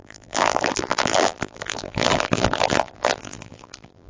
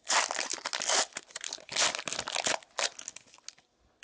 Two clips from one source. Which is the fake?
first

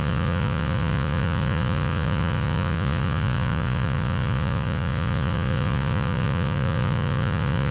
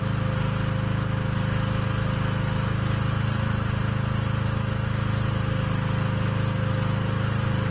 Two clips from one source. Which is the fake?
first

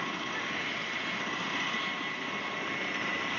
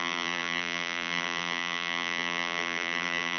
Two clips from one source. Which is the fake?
second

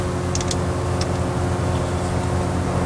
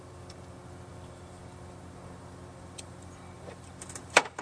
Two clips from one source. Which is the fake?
second